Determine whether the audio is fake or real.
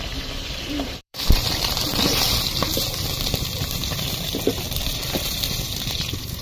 fake